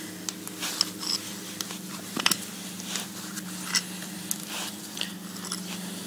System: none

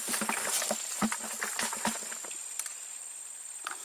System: none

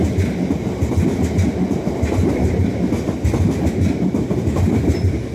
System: none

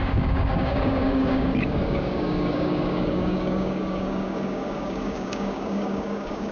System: codec, DAC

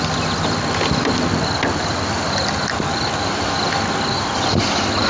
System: none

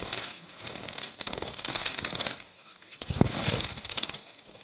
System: codec, DAC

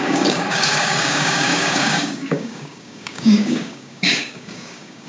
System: codec, DAC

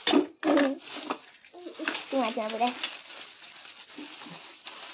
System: none